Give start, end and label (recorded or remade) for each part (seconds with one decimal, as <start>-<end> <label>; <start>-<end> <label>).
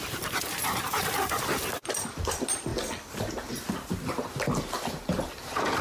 0.0-2.7 remade; 2.7-5.8 recorded